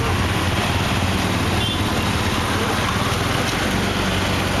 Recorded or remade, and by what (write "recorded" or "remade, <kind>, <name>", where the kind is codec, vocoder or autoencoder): recorded